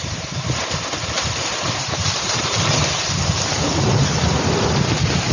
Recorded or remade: remade